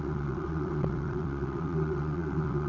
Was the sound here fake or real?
fake